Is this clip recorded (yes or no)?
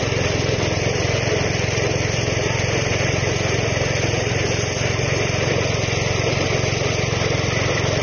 yes